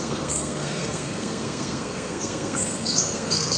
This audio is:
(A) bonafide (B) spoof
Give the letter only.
B